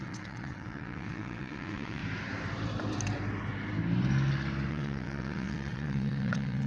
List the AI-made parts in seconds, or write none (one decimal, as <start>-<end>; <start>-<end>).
0.0-2.0; 4.7-6.7